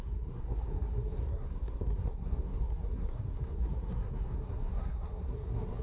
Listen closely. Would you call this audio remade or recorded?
remade